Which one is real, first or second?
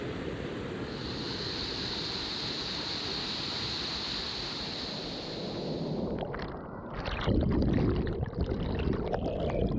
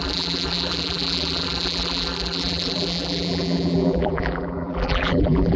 first